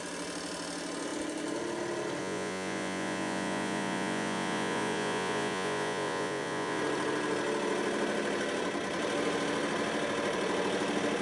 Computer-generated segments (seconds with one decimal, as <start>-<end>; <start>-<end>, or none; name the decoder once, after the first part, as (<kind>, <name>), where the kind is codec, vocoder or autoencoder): 2.2-6.8 (vocoder, Vocos)

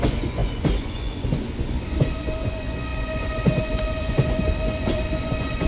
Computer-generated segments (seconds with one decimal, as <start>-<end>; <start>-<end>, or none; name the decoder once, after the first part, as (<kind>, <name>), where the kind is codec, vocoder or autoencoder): 0.0-5.7 (vocoder, Vocos)

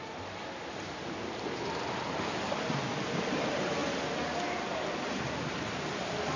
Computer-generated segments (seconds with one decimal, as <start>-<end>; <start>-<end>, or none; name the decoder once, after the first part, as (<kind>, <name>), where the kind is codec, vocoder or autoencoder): none

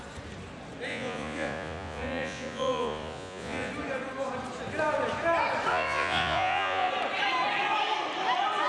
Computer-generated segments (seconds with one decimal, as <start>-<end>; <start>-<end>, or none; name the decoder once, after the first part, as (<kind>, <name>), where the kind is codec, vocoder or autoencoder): 0.9-3.7 (vocoder, Vocos); 5.7-6.9